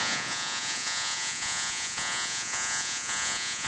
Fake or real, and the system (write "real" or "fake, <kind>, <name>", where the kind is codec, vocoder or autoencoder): fake, vocoder, Vocos